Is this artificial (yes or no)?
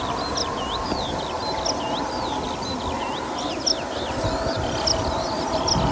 no